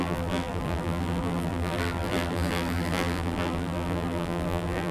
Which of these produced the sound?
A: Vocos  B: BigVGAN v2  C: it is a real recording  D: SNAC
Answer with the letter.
B